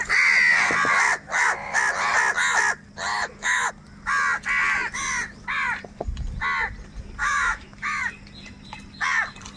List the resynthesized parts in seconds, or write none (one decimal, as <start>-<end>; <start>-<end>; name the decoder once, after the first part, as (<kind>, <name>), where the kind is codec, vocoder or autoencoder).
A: 3.1-3.7 (autoencoder, DAC-VAE); 7.2-8.0